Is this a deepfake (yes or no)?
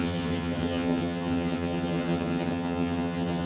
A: yes